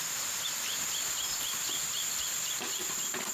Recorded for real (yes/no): yes